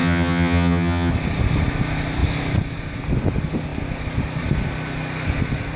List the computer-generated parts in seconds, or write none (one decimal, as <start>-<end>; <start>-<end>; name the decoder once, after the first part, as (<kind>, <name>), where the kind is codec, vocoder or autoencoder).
0.0-1.1 (vocoder, HiFi-GAN)